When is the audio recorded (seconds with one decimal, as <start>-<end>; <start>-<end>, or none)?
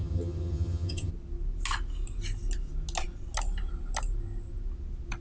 1.1-5.2